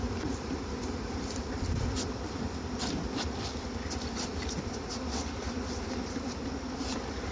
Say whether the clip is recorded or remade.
remade